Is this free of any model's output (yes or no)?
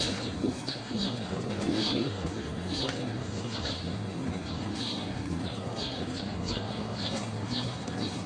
no